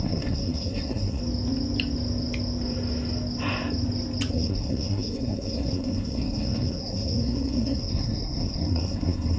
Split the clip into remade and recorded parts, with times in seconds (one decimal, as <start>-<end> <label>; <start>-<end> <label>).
0.0-1.2 remade; 1.2-4.3 recorded; 4.3-9.4 remade